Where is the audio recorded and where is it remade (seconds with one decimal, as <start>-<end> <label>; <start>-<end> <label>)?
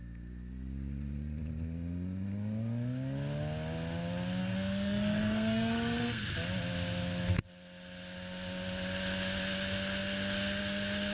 0.0-4.4 recorded; 4.4-6.3 remade; 6.3-11.1 recorded